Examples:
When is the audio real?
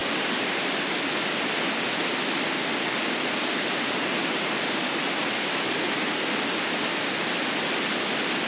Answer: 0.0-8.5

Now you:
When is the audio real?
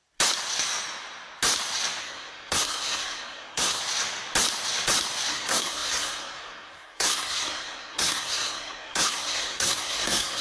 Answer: 0.0-2.0; 3.8-5.3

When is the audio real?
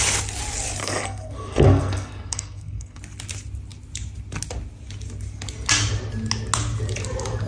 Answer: 0.0-0.8; 3.0-7.5